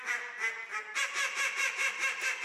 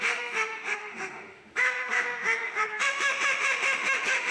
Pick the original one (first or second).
first